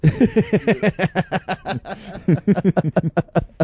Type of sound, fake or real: real